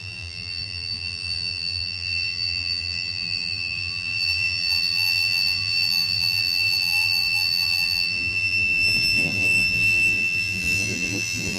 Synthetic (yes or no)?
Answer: yes